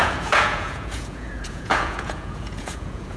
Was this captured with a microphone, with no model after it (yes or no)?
no